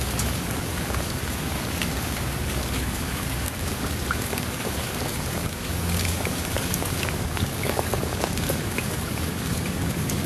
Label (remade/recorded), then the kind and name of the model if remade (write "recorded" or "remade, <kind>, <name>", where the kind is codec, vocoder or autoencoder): remade, codec, DAC